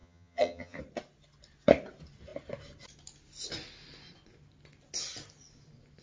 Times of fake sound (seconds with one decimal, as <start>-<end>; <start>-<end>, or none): 0.0-0.8